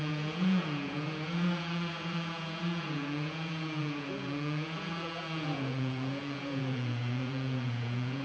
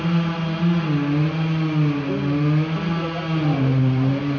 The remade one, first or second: first